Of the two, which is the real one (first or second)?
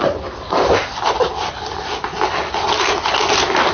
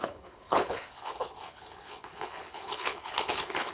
first